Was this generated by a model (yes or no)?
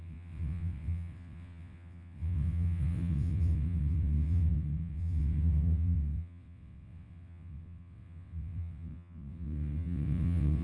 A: yes